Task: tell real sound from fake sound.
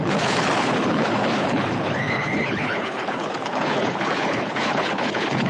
fake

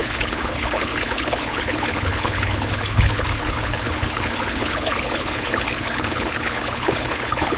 fake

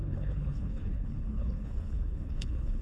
fake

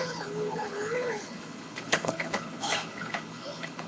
fake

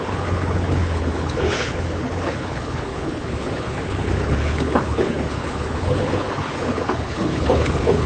fake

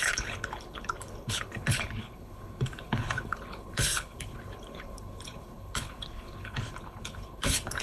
fake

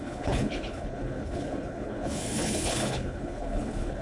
fake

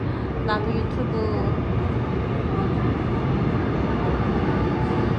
real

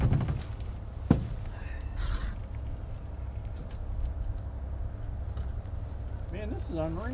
real